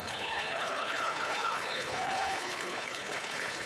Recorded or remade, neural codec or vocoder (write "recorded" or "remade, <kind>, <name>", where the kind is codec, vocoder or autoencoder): remade, codec, HILCodec